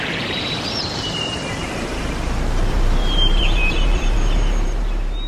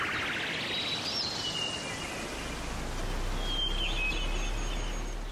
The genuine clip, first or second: second